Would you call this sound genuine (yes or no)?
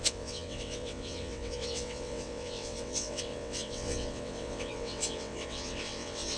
no